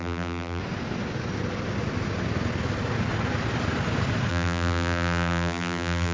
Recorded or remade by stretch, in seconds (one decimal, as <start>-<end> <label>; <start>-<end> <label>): 0.0-0.6 remade; 0.6-4.3 recorded; 4.3-6.1 remade

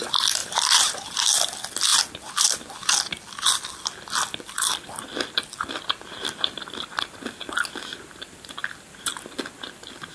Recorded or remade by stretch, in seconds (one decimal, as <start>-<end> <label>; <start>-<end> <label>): 0.0-0.4 recorded; 0.4-1.0 remade; 1.0-1.9 recorded; 1.9-6.8 remade; 6.8-10.1 recorded